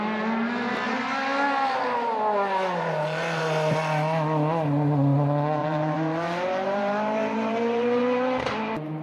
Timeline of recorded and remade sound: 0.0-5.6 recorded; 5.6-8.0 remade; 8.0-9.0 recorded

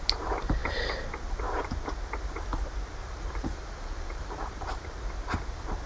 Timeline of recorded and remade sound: 0.0-3.0 recorded; 3.0-4.5 remade; 4.5-5.9 recorded

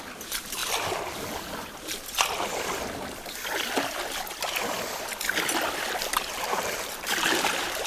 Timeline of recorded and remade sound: 0.0-6.0 recorded; 6.0-7.5 remade; 7.5-7.9 recorded

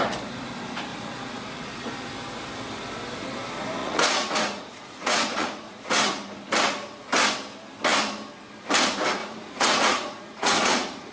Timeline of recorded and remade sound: 0.0-0.9 recorded; 0.9-1.9 remade; 1.9-3.8 recorded; 3.8-5.8 remade; 5.8-9.2 recorded; 9.2-11.1 remade

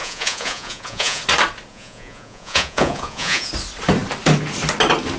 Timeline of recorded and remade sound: 0.0-1.2 remade; 1.2-1.7 recorded; 1.7-3.5 remade; 3.5-5.2 recorded

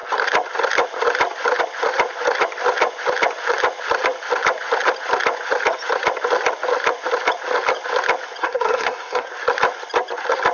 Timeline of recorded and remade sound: 0.0-8.4 recorded; 8.4-9.3 remade; 9.3-10.5 recorded

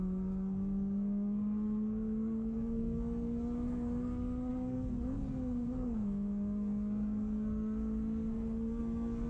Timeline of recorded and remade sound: 0.0-9.3 remade

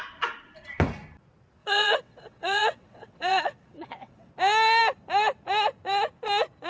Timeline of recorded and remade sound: 0.0-1.6 recorded; 1.6-4.3 remade; 4.3-6.7 recorded